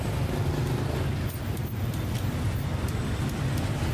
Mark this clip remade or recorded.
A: recorded